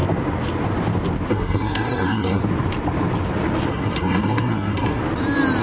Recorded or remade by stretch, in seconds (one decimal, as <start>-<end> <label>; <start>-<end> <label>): 0.0-1.3 recorded; 1.3-2.4 remade; 2.4-3.7 recorded; 3.7-5.0 remade; 5.0-5.6 recorded